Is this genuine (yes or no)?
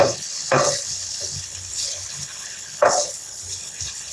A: no